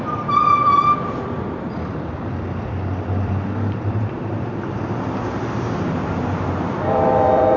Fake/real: fake